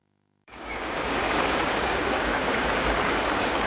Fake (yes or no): yes